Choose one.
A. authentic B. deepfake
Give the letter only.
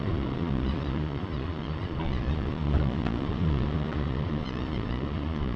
B